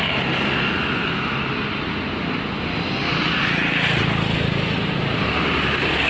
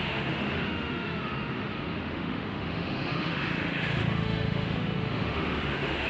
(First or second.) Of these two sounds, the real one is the first